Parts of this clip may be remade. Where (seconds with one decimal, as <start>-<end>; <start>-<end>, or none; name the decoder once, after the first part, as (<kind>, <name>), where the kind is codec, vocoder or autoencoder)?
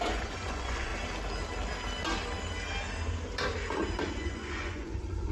0.0-0.9 (vocoder, Vocos); 4.1-5.3